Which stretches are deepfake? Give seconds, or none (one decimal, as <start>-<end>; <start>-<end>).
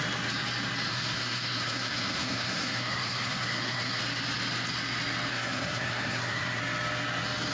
0.9-4.0; 5.3-6.6